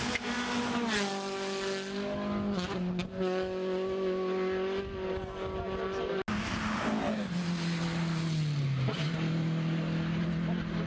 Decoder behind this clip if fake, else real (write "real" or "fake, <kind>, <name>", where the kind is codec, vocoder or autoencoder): real